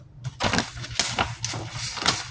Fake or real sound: real